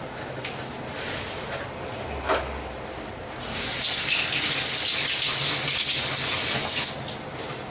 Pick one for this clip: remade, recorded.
recorded